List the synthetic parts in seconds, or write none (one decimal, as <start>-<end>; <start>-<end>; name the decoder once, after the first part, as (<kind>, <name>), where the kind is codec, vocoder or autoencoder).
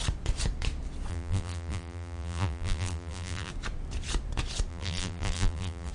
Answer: 1.1-3.5 (vocoder, BigVGAN v2); 4.7-5.9